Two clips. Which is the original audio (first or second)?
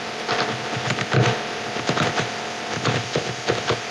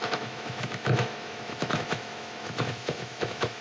first